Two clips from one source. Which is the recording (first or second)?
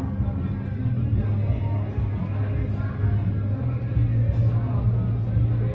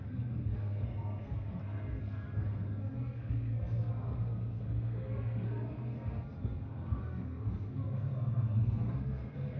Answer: first